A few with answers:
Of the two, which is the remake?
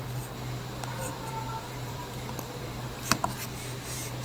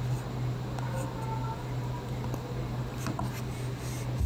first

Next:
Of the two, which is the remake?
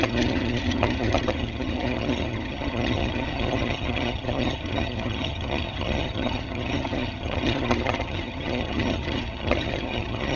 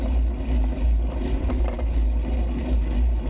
first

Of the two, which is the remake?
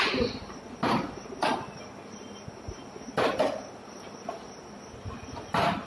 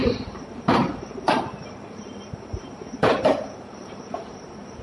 second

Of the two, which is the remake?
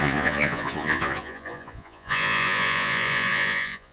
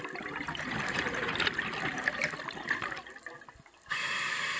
first